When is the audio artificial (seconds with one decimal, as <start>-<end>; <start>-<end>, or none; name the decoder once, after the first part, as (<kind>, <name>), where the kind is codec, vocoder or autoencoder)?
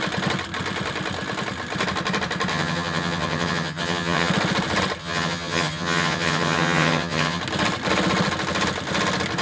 2.5-4.3 (vocoder, HiFi-GAN); 5.0-7.4